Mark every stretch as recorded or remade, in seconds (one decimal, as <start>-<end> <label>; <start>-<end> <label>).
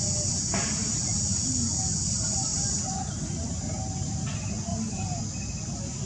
0.0-2.5 recorded; 2.5-3.8 remade; 3.8-4.7 recorded; 4.7-5.2 remade; 5.2-6.1 recorded